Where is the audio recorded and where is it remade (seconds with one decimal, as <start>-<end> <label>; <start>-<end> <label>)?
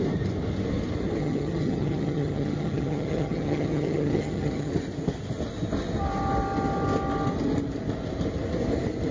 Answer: 0.0-1.2 recorded; 1.2-4.7 remade; 4.7-9.1 recorded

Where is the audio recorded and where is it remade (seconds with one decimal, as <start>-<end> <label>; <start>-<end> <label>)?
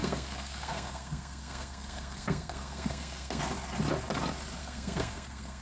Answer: 0.0-3.4 remade; 3.4-4.6 recorded; 4.6-5.6 remade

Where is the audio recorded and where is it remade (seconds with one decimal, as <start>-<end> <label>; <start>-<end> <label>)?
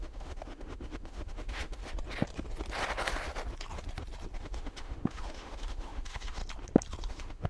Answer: 0.0-1.8 remade; 1.8-4.3 recorded; 4.3-6.4 remade; 6.4-7.1 recorded; 7.1-7.5 remade